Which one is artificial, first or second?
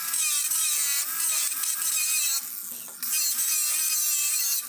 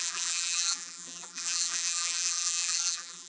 second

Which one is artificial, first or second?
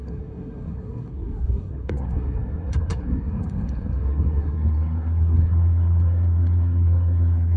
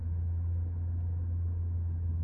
first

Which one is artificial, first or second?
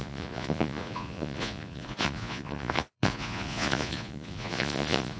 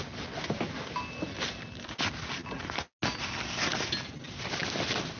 first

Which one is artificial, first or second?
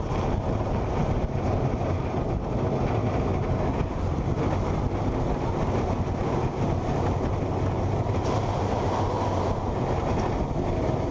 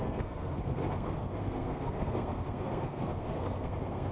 second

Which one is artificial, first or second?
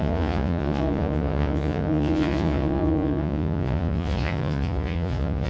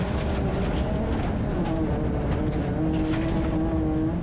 first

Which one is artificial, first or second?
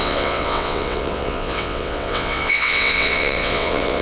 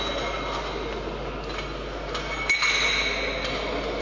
first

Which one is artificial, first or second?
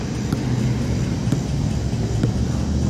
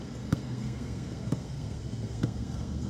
second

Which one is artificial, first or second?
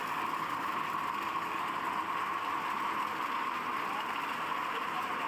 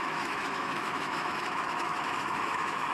second